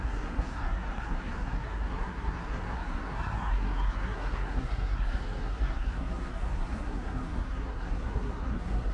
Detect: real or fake fake